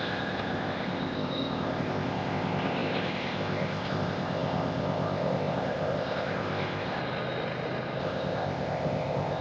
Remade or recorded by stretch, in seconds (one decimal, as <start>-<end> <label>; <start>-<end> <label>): 0.0-7.0 remade; 7.0-8.0 recorded; 8.0-9.4 remade